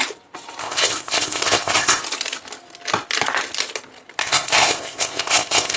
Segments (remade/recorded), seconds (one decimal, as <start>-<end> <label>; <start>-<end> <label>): 0.0-0.6 recorded; 0.6-2.0 remade; 2.0-4.2 recorded; 4.2-5.8 remade